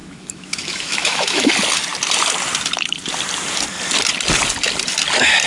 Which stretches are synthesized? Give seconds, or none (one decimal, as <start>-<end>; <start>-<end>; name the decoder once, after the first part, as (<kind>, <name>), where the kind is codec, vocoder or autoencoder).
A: 0.0-1.5 (autoencoder, DAC-VAE)